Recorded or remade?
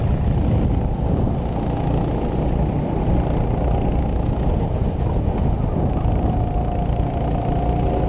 recorded